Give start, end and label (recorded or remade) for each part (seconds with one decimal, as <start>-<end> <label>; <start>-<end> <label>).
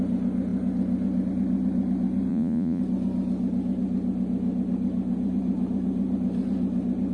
0.0-2.3 recorded; 2.3-2.8 remade; 2.8-7.1 recorded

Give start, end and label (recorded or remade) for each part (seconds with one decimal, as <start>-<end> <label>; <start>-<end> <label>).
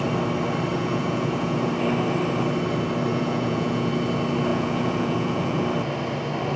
0.0-0.7 recorded; 0.7-1.7 remade; 1.7-3.1 recorded; 3.1-3.9 remade; 3.9-4.5 recorded; 4.5-5.6 remade; 5.6-6.6 recorded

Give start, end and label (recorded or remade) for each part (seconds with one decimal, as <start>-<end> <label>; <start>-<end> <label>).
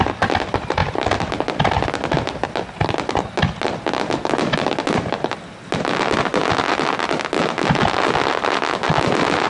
0.0-9.5 recorded